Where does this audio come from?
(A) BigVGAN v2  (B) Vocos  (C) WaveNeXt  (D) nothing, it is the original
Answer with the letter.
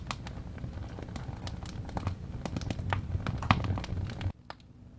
D